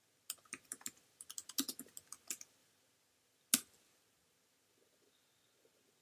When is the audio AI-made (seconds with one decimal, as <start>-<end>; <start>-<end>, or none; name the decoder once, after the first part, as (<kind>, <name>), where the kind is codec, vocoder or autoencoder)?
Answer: none